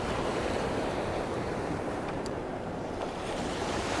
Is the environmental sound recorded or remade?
remade